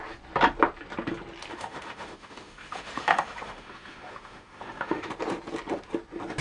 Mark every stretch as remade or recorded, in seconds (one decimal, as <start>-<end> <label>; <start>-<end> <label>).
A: 0.0-1.5 recorded; 1.5-5.1 remade; 5.1-6.4 recorded